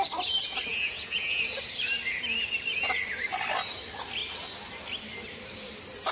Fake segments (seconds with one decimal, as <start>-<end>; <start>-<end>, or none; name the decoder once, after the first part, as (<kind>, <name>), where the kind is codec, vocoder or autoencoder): 0.7-1.4 (vocoder, Vocos)